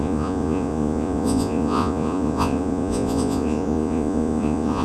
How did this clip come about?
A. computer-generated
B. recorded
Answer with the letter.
A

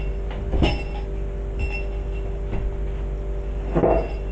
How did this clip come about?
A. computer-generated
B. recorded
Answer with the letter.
B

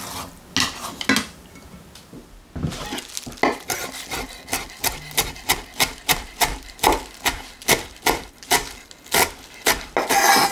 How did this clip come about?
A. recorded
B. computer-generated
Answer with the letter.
A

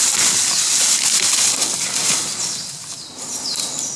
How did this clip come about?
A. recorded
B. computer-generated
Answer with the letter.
A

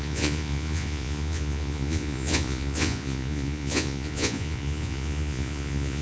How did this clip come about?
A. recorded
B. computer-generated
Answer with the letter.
B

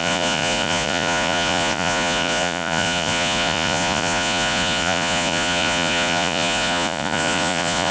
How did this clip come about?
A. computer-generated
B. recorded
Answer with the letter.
A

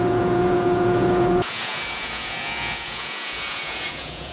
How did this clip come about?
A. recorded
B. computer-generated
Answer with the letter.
B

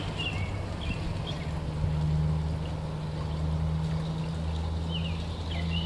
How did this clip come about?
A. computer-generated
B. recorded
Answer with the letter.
B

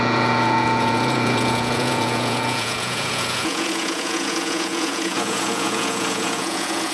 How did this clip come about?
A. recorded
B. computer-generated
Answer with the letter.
B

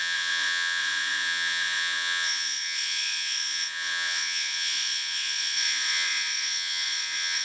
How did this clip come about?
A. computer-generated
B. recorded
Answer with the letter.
A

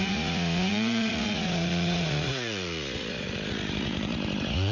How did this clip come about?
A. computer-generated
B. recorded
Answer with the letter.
A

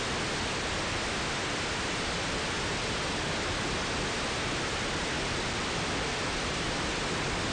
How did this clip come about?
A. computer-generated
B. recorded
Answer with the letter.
B